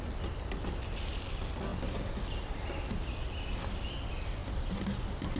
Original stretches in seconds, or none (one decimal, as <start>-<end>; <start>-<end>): 0.0-4.4; 5.0-5.4